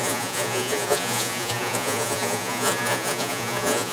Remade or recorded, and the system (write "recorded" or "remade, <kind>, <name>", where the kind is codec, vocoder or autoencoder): remade, vocoder, Vocos